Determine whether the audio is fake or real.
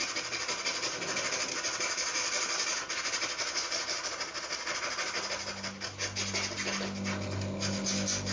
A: real